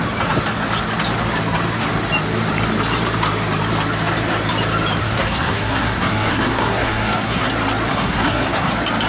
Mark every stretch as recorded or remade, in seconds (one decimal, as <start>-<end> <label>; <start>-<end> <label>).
0.0-5.0 recorded; 5.0-7.5 remade; 7.5-7.9 recorded; 7.9-8.7 remade; 8.7-9.1 recorded